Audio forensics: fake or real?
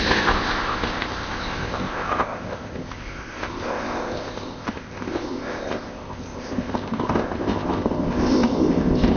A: fake